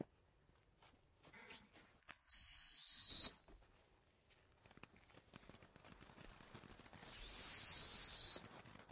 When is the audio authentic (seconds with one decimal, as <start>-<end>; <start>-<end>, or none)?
0.0-2.0; 3.1-8.9